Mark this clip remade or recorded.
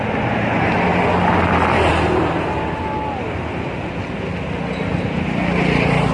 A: recorded